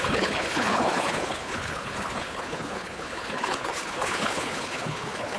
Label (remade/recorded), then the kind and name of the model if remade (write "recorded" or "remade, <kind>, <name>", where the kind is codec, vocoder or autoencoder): remade, codec, HILCodec